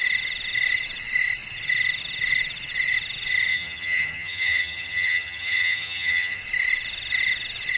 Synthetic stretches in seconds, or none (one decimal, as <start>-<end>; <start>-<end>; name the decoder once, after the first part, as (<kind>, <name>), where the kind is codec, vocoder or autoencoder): 3.5-6.4 (vocoder, HiFi-GAN)